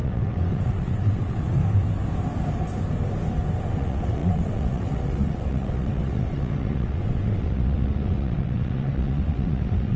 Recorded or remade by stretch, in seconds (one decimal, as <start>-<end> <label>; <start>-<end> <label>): 0.0-1.6 remade; 1.6-3.7 recorded; 3.7-10.0 remade